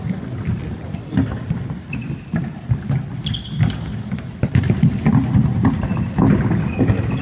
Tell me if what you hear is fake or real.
real